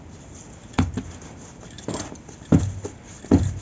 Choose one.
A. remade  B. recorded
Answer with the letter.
B